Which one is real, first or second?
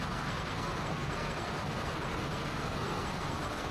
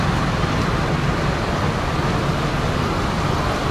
second